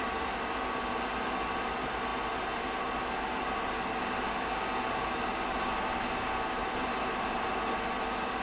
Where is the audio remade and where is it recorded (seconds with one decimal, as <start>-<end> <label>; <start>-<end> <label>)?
0.0-8.4 recorded